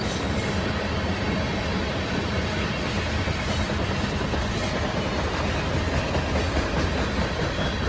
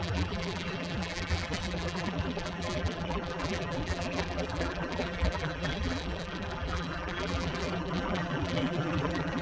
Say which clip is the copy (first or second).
second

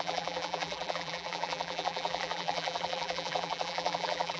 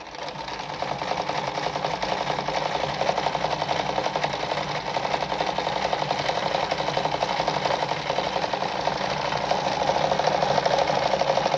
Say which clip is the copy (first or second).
first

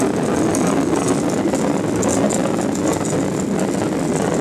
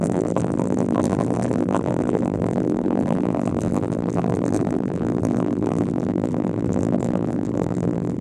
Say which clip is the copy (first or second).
second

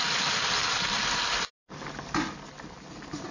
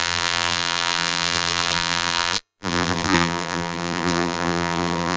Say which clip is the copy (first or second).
second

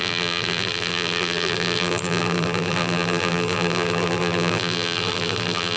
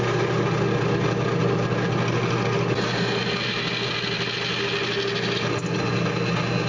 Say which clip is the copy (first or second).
first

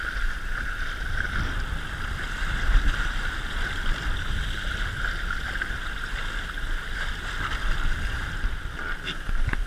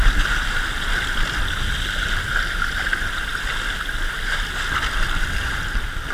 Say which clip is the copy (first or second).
first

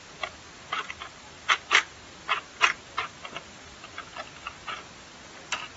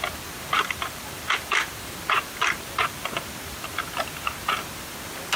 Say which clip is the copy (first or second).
second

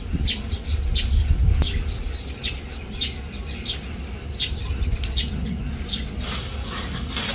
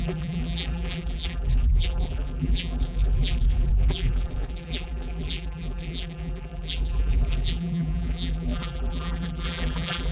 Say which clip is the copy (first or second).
second